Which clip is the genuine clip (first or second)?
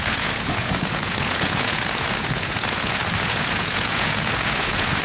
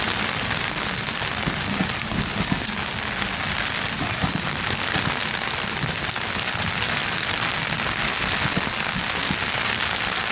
second